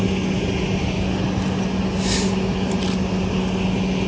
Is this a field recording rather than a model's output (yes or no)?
yes